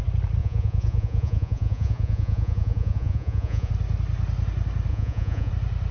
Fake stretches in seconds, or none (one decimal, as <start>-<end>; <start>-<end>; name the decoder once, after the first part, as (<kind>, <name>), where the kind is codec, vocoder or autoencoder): 0.4-3.7 (vocoder, Vocos); 4.9-5.5